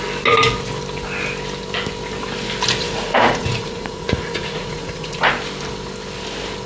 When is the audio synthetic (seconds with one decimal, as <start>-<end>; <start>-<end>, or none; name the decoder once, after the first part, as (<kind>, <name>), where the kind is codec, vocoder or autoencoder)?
2.8-5.3 (vocoder, Vocos)